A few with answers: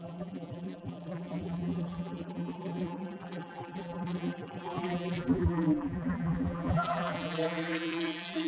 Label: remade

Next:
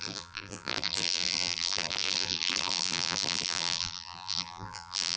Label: remade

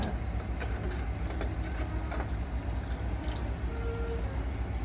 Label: recorded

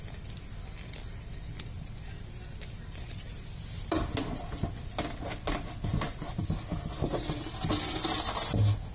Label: recorded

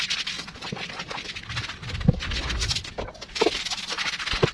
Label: recorded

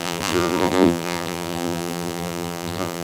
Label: remade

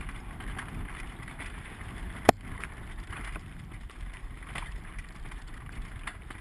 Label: remade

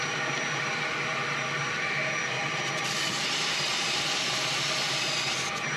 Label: recorded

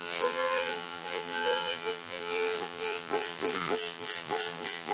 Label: remade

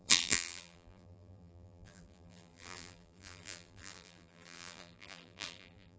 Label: remade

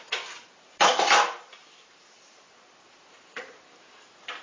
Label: remade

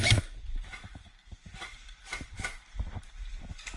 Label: remade